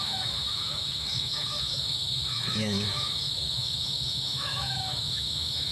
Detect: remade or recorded remade